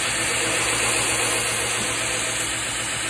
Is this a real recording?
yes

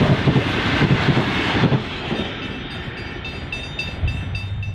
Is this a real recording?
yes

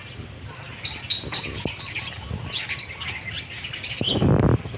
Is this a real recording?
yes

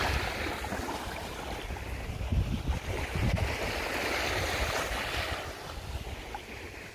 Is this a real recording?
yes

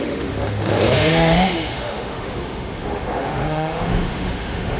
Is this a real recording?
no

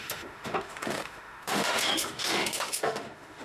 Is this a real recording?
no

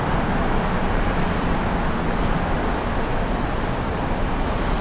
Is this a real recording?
yes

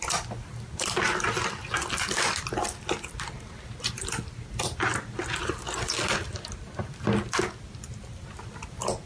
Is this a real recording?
yes